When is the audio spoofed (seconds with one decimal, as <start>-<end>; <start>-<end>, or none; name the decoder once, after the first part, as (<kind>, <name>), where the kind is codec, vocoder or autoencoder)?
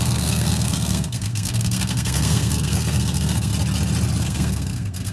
0.0-3.5 (codec, SNAC); 4.2-5.1